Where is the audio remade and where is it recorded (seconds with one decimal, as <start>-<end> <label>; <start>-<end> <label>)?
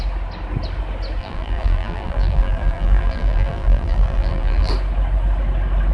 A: 0.0-1.2 recorded; 1.2-4.7 remade; 4.7-5.9 recorded